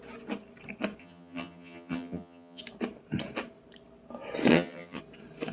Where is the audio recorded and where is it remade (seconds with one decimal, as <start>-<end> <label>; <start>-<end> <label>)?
0.0-1.0 recorded; 1.0-2.6 remade; 2.6-4.5 recorded; 4.5-5.0 remade; 5.0-5.5 recorded